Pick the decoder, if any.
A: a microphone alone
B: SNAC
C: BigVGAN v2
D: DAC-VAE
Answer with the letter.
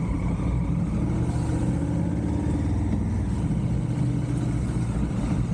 A